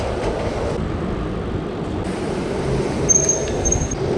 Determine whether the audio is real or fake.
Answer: real